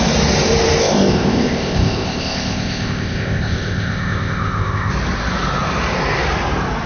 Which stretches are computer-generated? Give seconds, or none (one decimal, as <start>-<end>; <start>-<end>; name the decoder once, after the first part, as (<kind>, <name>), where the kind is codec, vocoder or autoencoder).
0.8-4.9 (codec, ZipCodec)